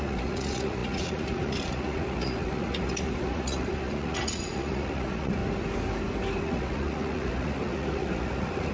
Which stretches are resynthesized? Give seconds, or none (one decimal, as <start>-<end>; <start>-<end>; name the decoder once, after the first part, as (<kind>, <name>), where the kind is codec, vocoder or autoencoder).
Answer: 0.0-5.4 (vocoder, Vocos); 6.4-8.7